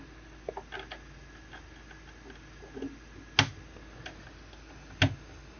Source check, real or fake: real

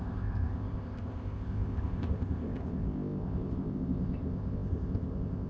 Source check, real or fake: fake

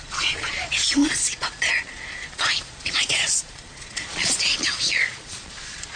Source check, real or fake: fake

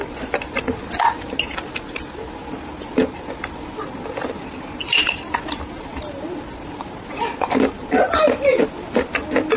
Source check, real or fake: real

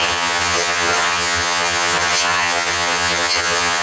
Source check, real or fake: fake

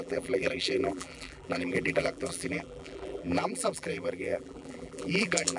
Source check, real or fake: fake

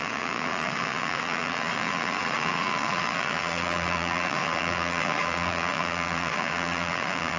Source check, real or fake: fake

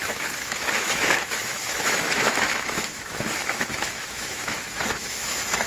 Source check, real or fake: fake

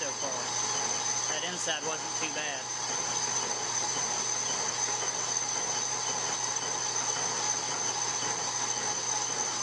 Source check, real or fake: real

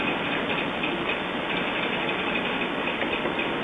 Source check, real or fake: real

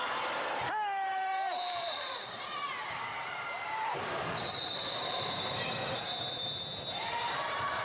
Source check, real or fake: fake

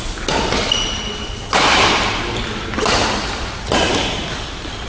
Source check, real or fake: real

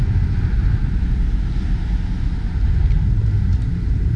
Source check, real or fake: real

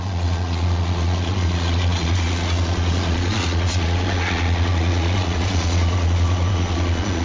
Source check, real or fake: fake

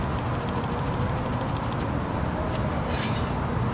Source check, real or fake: real